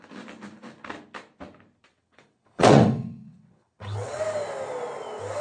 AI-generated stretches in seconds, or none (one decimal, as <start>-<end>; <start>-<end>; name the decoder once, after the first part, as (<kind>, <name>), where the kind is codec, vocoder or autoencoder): 1.9-4.2 (vocoder, WaveNeXt)